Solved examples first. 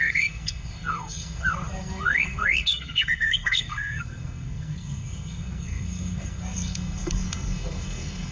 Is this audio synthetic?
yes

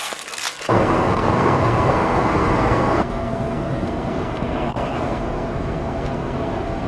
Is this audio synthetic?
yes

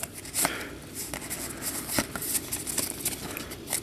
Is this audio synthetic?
no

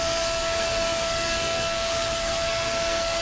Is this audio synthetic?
yes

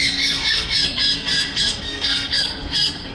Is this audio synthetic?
yes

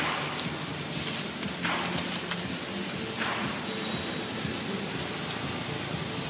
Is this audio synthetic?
no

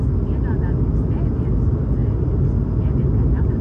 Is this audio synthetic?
no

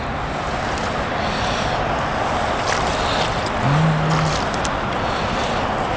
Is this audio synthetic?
no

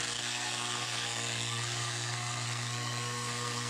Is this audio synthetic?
yes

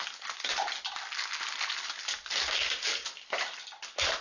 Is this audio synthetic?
no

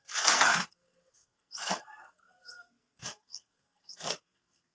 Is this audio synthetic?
yes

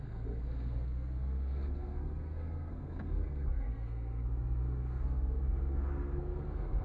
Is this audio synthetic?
yes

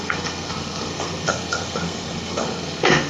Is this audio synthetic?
yes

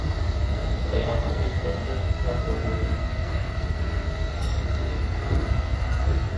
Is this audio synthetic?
yes